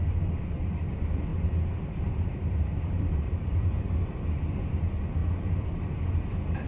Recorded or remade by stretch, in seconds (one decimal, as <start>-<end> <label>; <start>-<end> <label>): 0.0-1.3 recorded; 1.3-4.2 remade; 4.2-5.2 recorded; 5.2-5.9 remade; 5.9-6.7 recorded